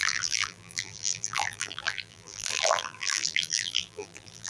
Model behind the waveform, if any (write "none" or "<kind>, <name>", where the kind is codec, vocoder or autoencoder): vocoder, BigVGAN v2